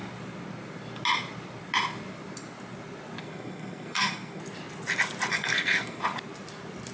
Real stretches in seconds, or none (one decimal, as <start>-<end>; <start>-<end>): 0.0-3.2; 4.4-5.3; 6.0-6.9